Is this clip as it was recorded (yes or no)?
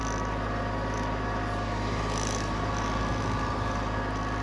yes